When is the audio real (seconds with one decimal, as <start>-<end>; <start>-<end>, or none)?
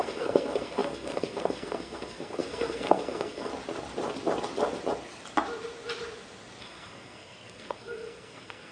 3.5-6.6